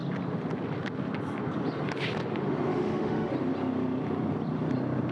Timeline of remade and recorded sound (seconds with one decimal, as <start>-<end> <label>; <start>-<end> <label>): 0.0-2.7 recorded; 2.7-3.3 remade; 3.3-5.1 recorded